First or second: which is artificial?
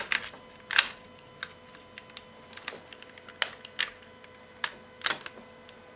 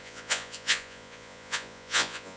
second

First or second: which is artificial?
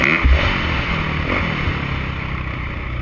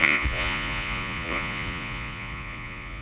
second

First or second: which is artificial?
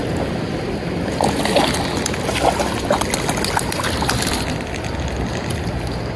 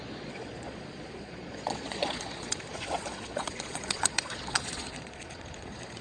second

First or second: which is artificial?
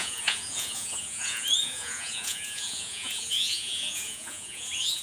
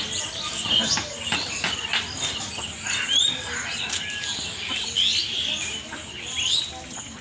first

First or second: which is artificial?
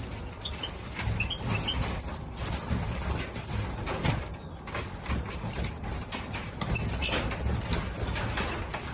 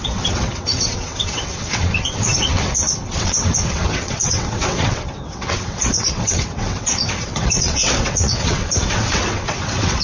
second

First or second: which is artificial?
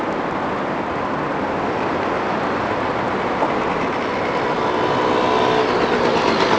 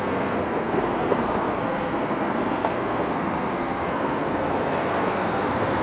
second